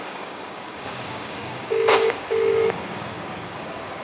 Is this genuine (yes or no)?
no